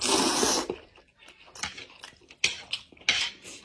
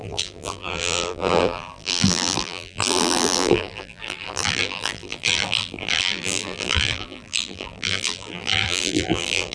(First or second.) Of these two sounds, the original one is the first